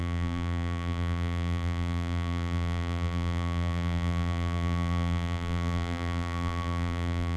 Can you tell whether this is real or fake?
fake